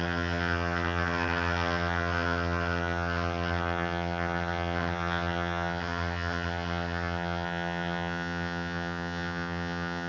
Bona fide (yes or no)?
no